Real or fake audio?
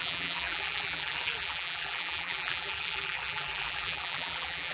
fake